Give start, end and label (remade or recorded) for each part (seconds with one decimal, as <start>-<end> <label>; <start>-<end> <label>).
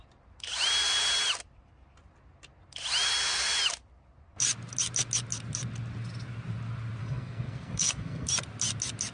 0.0-7.0 recorded; 7.0-8.3 remade; 8.3-9.1 recorded